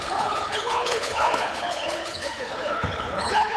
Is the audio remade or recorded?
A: remade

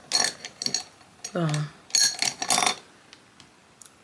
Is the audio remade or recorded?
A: recorded